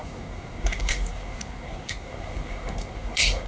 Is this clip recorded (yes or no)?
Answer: no